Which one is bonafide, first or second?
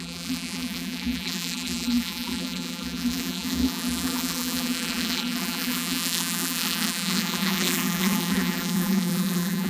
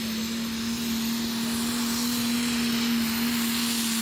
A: second